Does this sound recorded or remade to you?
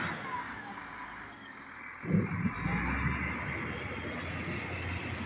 recorded